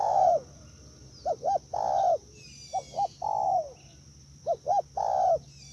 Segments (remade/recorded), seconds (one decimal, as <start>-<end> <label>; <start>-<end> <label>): 0.0-5.7 recorded